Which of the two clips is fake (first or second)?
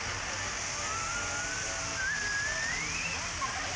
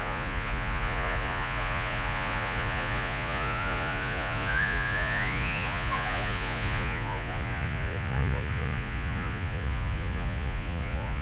second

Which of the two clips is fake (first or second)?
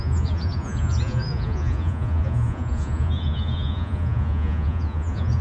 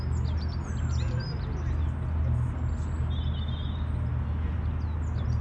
first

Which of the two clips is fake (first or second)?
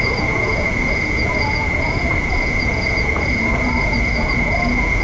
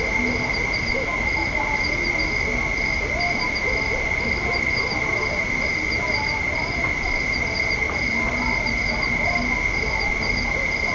first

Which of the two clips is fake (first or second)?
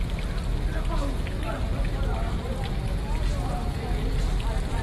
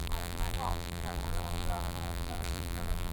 second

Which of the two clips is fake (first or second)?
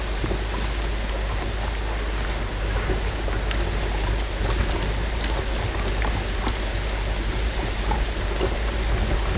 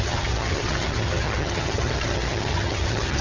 second